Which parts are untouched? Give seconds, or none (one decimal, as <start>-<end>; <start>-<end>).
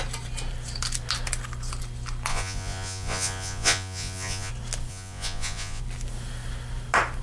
0.0-2.3; 4.5-4.9; 5.8-7.2